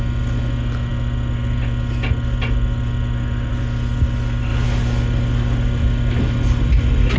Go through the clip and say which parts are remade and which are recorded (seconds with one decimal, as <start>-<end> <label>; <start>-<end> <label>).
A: 0.0-7.2 recorded